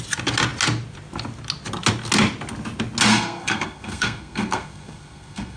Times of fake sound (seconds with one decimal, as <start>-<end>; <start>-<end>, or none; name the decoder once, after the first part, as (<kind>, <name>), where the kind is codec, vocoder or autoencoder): 3.1-5.6 (codec, SNAC)